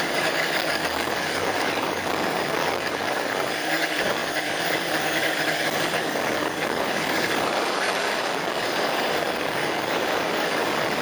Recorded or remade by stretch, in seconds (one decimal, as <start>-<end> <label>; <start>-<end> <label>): 0.0-11.0 remade